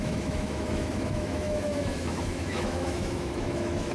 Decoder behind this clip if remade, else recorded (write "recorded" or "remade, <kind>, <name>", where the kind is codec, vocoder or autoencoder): remade, autoencoder, DAC-VAE